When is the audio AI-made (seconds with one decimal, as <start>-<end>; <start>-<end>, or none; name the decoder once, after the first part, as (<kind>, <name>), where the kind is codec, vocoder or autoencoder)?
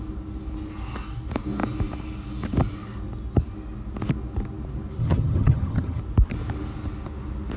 5.0-6.0 (vocoder, HiFi-GAN)